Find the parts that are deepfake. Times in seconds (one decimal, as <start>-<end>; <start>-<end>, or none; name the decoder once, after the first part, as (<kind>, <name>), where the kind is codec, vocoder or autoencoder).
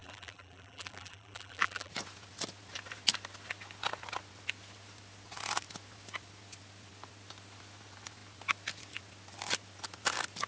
0.0-1.9 (vocoder, BigVGAN v2)